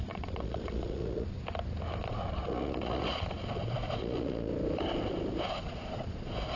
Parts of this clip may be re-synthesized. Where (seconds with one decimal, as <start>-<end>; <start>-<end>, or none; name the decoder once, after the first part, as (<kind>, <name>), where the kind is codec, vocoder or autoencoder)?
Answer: 0.0-1.4 (vocoder, Vocos); 2.0-4.5; 5.6-6.6